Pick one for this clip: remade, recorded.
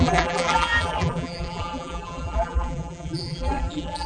remade